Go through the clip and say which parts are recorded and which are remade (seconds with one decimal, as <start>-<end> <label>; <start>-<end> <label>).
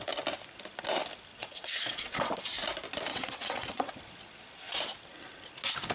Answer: 0.0-1.4 recorded; 1.4-2.3 remade; 2.3-3.1 recorded; 3.1-3.9 remade; 3.9-5.9 recorded